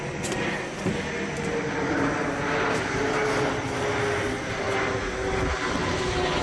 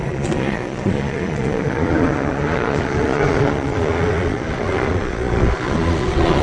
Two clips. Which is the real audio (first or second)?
first